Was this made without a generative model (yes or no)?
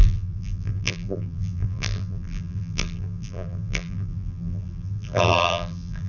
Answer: no